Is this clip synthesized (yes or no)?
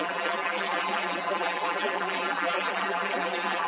yes